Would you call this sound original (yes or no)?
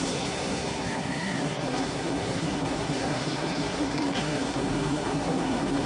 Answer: no